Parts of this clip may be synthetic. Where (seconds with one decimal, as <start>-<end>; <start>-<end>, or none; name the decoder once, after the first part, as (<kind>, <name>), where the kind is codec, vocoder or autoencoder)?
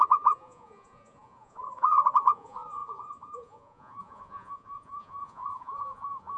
0.0-6.4 (vocoder, Vocos)